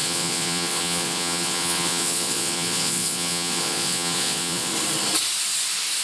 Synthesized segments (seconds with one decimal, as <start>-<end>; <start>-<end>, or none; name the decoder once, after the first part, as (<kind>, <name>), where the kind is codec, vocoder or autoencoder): 0.0-4.7 (vocoder, Vocos)